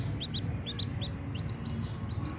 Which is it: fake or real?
real